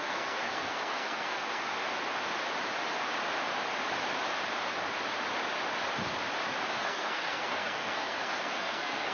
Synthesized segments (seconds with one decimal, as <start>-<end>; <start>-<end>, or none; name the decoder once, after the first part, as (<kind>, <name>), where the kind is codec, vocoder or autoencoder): 0.0-1.7 (codec, SNAC); 6.8-9.1